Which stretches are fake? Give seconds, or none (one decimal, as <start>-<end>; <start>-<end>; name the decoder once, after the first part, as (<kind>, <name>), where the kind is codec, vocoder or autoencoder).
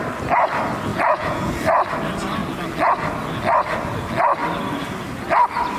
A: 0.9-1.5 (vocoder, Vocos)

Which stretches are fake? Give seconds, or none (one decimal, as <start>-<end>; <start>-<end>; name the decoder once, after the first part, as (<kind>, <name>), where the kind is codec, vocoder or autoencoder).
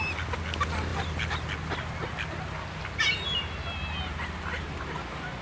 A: none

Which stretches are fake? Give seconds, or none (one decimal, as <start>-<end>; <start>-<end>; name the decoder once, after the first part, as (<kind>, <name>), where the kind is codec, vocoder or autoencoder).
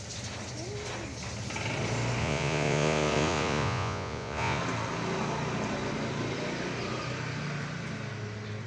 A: 2.2-4.6 (vocoder, Vocos)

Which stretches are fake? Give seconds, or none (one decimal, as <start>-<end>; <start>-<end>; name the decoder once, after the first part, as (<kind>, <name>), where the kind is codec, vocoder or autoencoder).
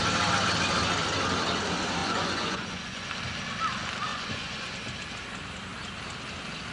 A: 2.0-3.1 (vocoder, Vocos); 4.1-4.7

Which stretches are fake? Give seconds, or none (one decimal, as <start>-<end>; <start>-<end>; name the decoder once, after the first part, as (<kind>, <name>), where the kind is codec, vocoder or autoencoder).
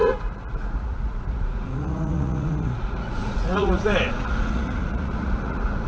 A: 0.0-5.9 (vocoder, Vocos)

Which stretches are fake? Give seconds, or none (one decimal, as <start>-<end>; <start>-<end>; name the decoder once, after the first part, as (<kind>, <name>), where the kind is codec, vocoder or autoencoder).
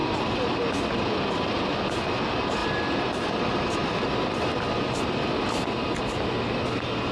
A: none